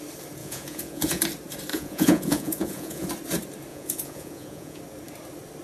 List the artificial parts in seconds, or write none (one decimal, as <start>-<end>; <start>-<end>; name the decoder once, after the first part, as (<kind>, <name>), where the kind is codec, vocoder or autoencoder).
0.4-1.2 (vocoder, Vocos); 1.7-3.1; 3.7-4.8